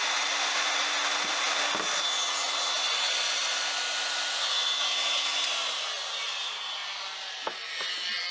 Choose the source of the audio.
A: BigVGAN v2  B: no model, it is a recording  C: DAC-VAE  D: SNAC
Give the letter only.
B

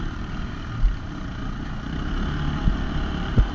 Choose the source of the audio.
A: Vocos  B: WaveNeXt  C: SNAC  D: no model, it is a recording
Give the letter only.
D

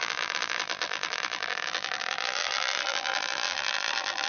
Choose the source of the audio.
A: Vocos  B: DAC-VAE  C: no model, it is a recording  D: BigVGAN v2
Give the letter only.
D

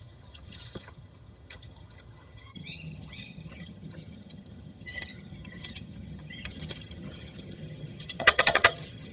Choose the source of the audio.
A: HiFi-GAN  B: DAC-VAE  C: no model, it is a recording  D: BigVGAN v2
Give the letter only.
A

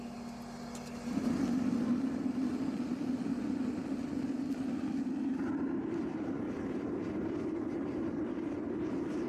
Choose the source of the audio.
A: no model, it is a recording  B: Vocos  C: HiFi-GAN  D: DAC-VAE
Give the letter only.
A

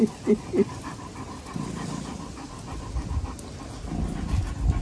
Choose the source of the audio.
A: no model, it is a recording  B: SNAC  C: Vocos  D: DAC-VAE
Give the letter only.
A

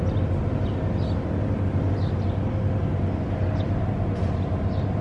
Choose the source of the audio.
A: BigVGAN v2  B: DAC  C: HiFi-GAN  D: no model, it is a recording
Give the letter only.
D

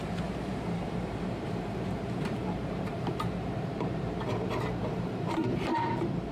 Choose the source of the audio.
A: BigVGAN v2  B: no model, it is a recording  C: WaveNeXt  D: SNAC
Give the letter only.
A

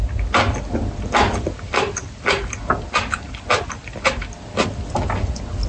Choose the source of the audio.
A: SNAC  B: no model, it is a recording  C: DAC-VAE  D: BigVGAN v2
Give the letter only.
B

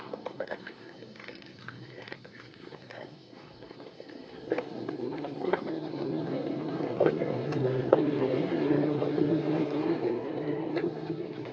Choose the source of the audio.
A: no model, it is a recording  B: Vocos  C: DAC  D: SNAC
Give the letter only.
D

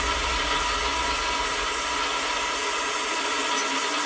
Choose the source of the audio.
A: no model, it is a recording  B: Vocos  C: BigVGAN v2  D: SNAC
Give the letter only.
A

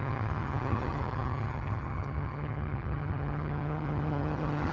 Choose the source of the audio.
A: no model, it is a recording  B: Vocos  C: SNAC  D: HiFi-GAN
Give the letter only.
D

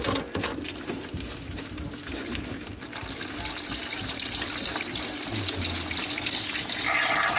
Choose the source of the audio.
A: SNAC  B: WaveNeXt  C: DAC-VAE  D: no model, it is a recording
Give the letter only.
D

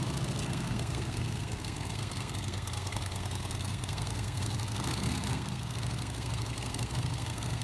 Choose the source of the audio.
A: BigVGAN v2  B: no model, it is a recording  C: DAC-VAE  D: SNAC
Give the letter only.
D